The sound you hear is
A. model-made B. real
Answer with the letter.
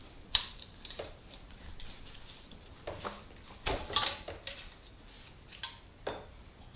B